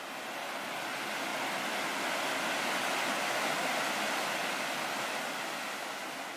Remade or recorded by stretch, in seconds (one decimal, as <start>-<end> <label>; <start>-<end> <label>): 0.0-6.4 recorded